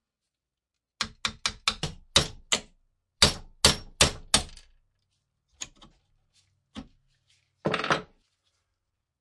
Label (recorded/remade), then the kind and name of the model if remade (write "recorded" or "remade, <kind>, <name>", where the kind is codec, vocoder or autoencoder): recorded